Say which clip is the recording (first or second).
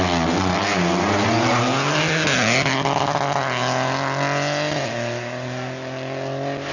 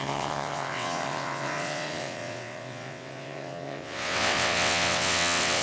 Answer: first